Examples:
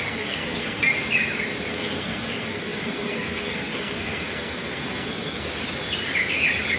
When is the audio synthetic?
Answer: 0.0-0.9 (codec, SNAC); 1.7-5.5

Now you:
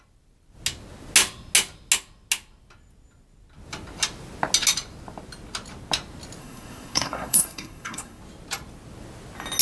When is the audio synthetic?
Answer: 6.4-8.2 (codec, SNAC)